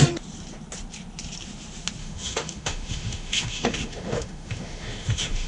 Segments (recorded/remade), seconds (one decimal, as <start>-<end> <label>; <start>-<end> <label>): 0.0-2.0 recorded; 2.0-5.5 remade